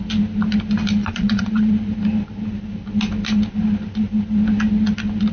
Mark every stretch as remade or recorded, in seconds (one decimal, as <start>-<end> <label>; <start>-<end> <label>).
0.0-1.0 recorded; 1.0-1.7 remade; 1.7-5.3 recorded